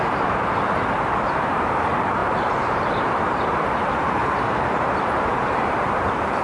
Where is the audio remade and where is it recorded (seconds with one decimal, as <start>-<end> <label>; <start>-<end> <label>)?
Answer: 0.0-6.4 remade